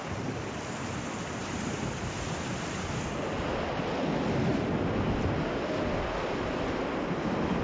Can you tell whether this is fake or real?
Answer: real